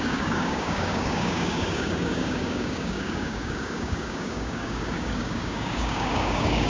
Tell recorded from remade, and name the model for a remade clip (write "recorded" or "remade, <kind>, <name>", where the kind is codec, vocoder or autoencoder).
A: remade, codec, DAC